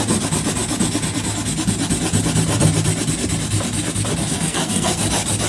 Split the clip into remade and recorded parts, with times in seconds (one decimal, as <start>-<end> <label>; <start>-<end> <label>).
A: 0.0-4.3 recorded; 4.3-5.0 remade; 5.0-5.5 recorded